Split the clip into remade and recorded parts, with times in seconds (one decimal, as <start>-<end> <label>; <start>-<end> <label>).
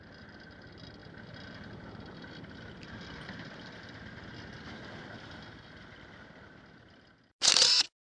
0.0-8.1 recorded